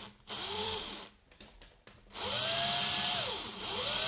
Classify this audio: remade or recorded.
remade